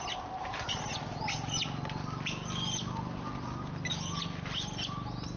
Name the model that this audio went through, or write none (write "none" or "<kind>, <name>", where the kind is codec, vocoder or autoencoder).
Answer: none